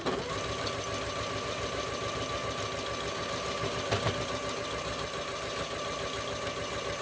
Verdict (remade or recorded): recorded